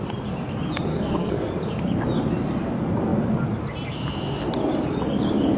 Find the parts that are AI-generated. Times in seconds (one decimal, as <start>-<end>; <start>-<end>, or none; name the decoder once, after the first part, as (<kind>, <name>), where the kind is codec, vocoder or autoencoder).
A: 0.9-1.5 (codec, SNAC)